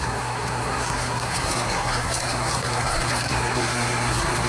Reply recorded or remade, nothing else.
remade